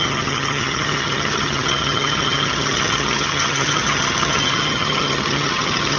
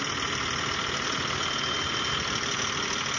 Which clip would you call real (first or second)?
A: second